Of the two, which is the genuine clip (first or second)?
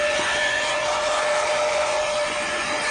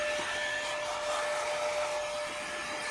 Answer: second